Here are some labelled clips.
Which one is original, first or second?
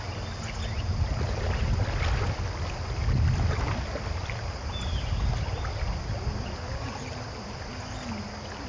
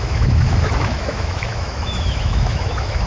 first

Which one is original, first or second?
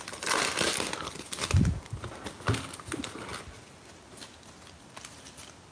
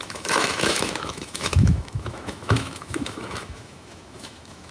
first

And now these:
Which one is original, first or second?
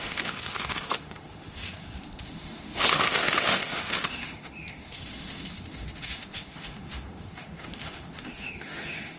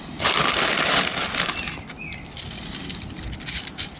second